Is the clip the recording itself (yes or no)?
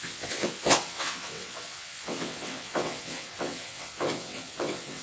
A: no